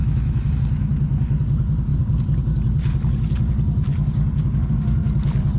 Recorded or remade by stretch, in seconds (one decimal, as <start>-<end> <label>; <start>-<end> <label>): 0.0-0.5 remade; 0.5-5.6 recorded

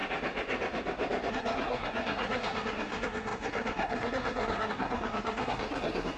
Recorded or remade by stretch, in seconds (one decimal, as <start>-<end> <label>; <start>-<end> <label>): 0.0-1.3 recorded; 1.3-6.2 remade

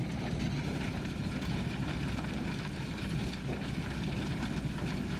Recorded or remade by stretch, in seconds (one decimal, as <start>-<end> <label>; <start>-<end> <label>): 0.0-2.0 remade; 2.0-5.2 recorded